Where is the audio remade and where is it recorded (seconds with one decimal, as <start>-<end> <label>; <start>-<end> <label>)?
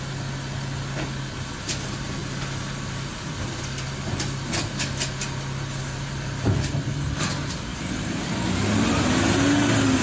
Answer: 0.0-5.8 recorded; 5.8-7.3 remade; 7.3-7.7 recorded; 7.7-8.3 remade; 8.3-10.0 recorded